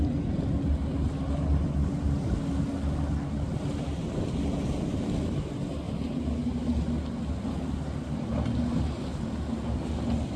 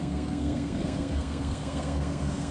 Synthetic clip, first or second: second